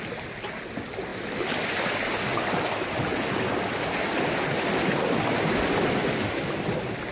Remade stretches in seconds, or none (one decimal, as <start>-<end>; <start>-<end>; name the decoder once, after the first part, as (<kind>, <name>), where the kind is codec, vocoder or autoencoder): none